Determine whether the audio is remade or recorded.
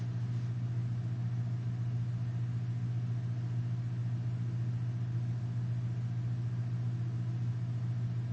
recorded